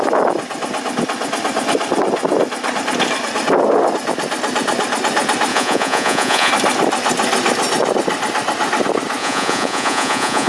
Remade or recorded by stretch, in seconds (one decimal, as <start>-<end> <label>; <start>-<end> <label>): 0.0-5.5 recorded; 5.5-6.5 remade; 6.5-9.2 recorded; 9.2-10.5 remade